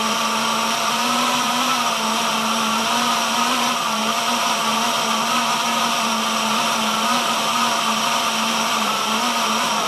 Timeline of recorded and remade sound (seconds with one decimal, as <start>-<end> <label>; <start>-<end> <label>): 0.0-9.9 remade